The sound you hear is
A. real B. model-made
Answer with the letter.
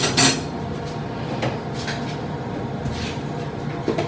A